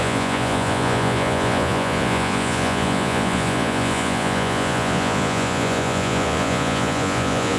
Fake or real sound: fake